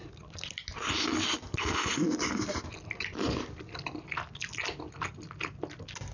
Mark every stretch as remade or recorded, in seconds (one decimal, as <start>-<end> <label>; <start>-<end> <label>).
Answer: 0.0-6.1 recorded